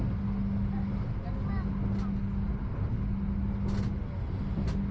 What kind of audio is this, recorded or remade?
recorded